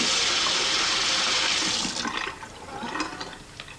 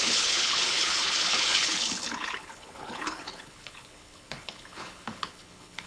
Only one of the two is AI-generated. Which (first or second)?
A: second